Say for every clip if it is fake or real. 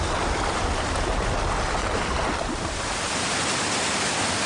real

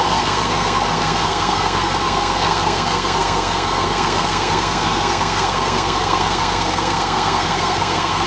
fake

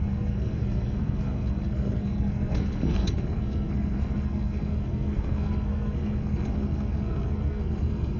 fake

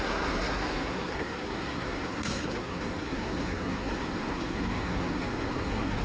fake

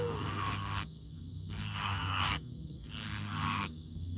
fake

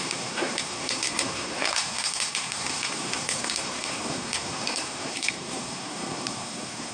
fake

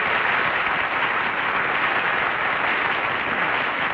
real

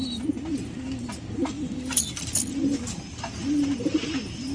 real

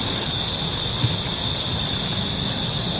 real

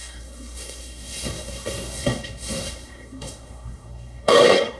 fake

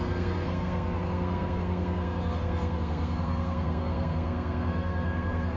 fake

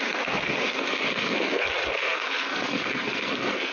fake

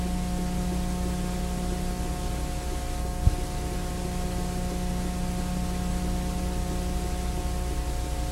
real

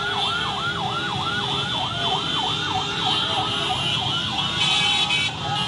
real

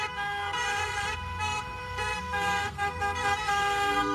fake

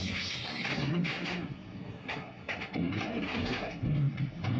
fake